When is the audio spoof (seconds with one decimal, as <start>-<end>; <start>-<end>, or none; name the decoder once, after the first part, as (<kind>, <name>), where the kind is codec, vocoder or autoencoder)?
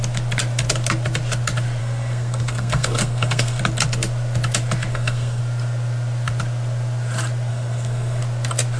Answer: 1.8-3.6 (codec, SNAC); 4.9-5.4; 7.5-8.2